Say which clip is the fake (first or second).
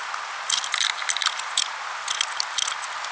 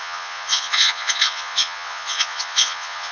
second